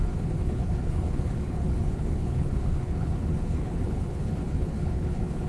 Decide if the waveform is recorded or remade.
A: remade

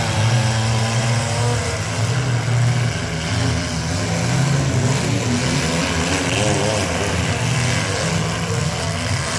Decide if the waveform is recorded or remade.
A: recorded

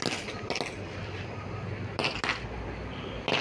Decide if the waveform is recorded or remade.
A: recorded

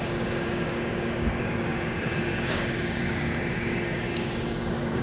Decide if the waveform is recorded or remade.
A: remade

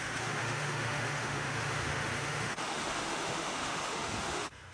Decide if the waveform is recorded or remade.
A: remade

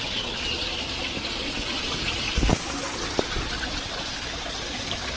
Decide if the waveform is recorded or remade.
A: recorded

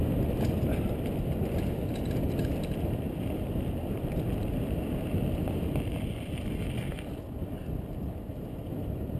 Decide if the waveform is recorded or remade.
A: recorded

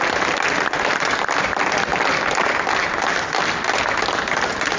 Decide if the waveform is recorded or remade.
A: recorded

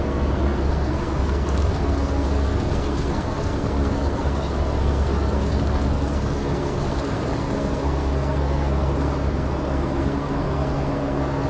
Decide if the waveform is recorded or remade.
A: remade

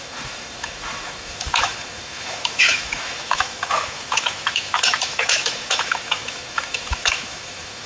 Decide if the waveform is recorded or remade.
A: remade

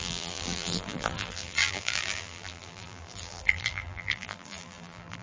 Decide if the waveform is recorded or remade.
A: remade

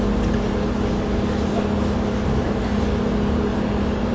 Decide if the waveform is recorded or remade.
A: recorded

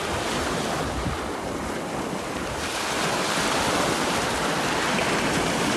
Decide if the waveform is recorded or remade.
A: recorded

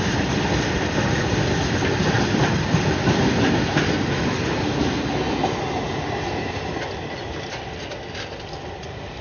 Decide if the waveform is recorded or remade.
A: recorded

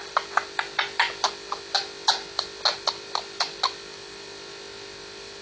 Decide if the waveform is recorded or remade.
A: recorded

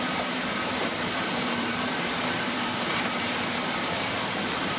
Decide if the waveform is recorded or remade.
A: remade